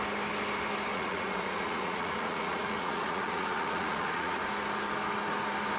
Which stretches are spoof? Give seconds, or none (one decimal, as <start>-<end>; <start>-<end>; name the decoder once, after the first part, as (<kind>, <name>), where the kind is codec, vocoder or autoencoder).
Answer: 0.9-4.4 (vocoder, Vocos)